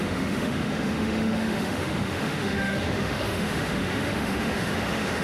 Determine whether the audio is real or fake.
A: fake